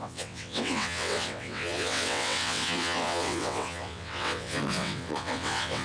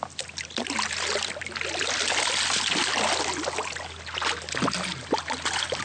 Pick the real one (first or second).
second